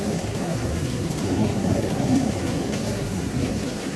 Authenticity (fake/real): fake